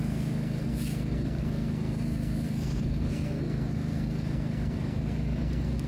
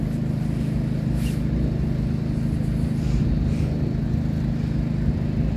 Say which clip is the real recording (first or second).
second